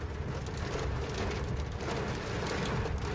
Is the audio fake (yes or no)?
no